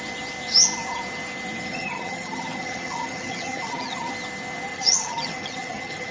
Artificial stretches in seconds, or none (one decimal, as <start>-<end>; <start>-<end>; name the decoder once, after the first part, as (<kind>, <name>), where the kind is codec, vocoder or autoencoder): 1.7-4.1 (vocoder, HiFi-GAN); 4.7-6.1